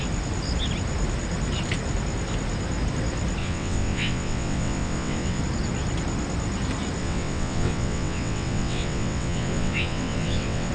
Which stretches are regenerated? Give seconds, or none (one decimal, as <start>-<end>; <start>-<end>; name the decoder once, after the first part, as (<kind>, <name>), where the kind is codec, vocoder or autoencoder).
3.4-5.4 (vocoder, WaveNeXt); 7.0-10.7